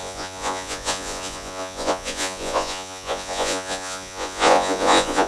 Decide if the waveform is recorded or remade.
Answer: remade